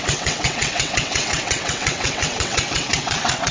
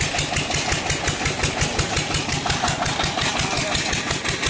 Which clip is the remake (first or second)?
first